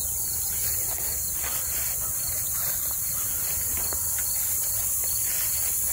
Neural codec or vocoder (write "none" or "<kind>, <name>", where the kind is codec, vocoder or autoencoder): none